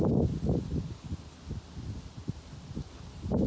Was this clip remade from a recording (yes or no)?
no